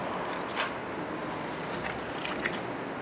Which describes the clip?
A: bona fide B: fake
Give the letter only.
A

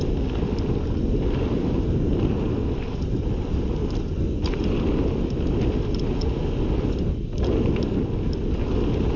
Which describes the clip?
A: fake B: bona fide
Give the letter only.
B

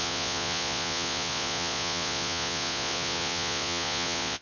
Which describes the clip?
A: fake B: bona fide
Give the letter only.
A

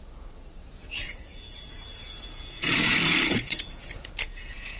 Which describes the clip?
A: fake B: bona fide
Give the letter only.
A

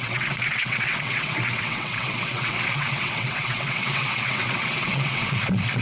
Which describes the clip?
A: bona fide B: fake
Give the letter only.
B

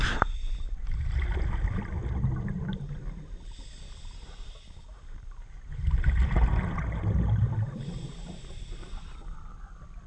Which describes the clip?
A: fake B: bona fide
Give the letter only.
B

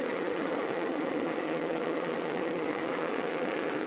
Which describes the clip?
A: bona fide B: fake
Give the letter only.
B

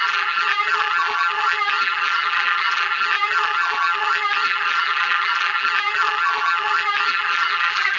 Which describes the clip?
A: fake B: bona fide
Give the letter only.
A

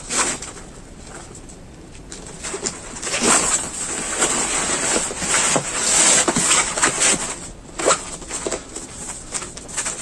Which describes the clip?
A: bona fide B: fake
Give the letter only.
A